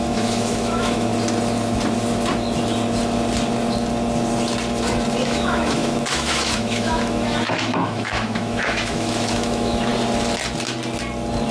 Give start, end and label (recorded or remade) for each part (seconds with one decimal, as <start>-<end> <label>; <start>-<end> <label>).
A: 0.0-1.1 remade; 1.1-5.2 recorded; 5.2-9.9 remade; 9.9-11.5 recorded